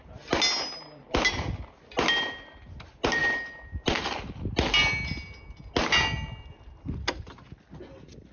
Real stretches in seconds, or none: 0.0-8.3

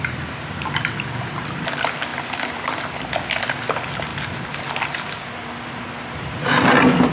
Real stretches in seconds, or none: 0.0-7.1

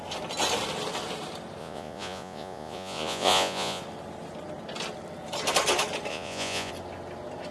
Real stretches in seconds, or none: 0.0-1.6; 3.8-6.1; 6.7-7.5